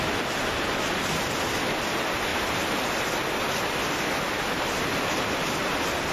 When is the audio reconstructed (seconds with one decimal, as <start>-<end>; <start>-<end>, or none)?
none